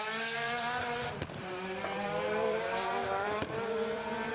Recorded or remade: remade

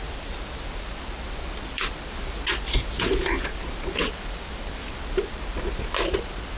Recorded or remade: recorded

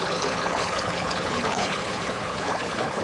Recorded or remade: remade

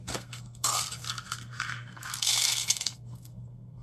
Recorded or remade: remade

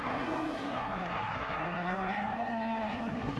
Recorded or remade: remade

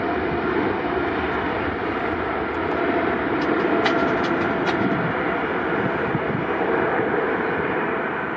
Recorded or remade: remade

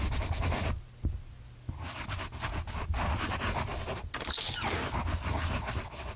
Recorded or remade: recorded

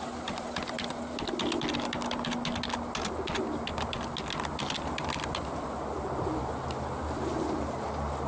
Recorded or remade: recorded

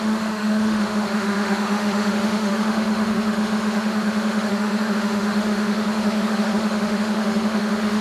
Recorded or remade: remade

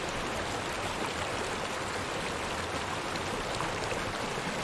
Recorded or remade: recorded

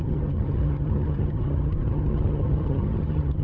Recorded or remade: remade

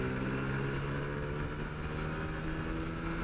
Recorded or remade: recorded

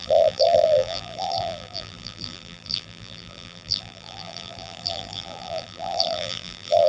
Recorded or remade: remade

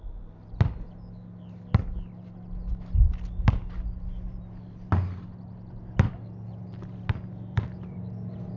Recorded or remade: recorded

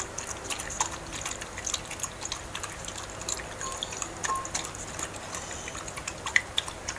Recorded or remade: recorded